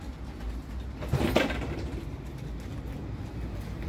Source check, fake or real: real